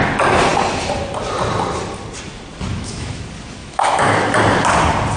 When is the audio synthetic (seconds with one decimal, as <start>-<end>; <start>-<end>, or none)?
2.7-3.2; 3.6-4.3